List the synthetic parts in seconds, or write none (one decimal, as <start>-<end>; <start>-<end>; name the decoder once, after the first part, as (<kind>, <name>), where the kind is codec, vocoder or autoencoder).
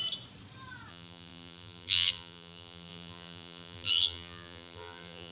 0.9-5.3 (vocoder, BigVGAN v2)